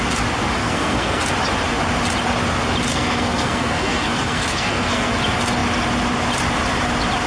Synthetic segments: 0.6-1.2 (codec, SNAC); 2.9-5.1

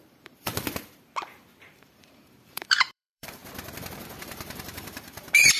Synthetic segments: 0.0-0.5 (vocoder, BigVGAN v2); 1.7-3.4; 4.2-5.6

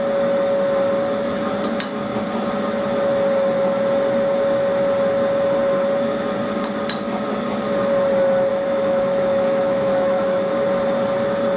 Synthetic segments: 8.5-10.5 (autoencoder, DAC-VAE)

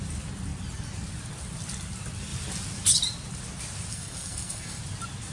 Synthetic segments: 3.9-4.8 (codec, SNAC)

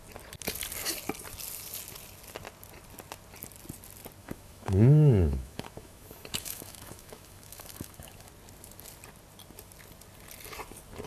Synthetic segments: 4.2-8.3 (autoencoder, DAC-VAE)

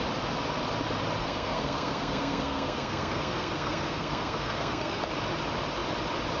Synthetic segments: 1.2-5.0 (codec, SNAC)